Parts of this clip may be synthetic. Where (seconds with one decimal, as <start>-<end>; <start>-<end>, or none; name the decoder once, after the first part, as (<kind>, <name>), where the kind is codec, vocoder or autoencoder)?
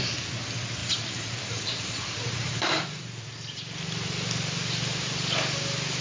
0.8-3.0 (vocoder, BigVGAN v2)